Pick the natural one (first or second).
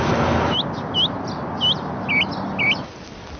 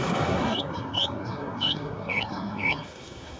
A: first